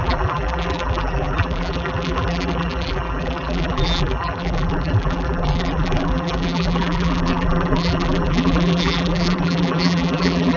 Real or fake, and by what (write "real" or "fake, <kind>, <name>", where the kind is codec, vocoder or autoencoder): fake, vocoder, BigVGAN v2